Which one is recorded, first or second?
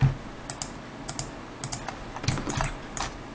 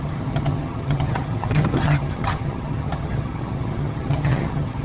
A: first